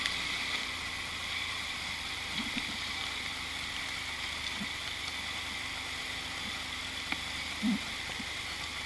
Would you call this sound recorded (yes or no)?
yes